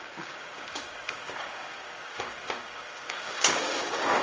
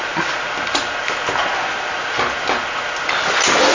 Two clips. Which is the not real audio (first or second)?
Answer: first